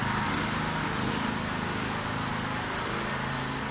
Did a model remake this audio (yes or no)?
no